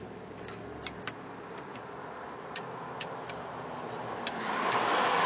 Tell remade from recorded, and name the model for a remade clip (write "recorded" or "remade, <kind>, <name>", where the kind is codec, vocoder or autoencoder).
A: recorded